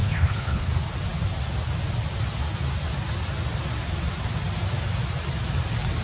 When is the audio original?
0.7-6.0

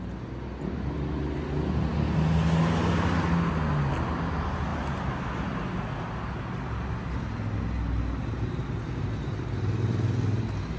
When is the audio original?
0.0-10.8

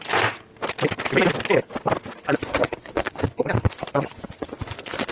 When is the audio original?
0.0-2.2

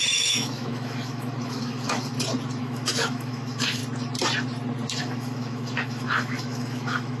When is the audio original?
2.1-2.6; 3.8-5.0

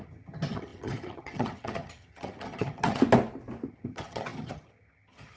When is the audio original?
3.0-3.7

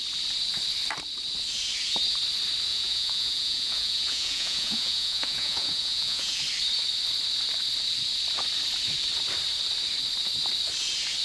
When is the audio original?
0.0-2.7; 6.4-11.2

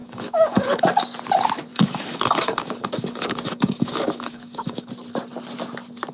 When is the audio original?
0.9-1.7; 4.9-6.1